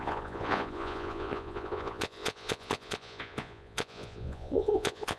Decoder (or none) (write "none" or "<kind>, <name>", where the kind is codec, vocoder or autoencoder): vocoder, Vocos